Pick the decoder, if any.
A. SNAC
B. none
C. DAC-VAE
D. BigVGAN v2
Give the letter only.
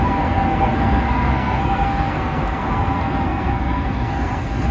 A